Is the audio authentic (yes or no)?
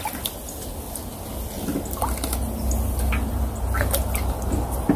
yes